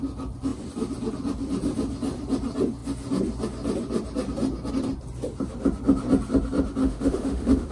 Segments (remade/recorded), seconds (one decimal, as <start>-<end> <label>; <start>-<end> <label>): 0.0-6.8 recorded; 6.8-7.7 remade